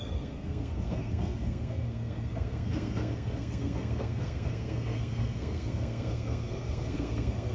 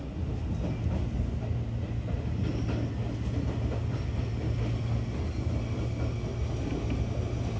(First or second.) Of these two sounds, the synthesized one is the first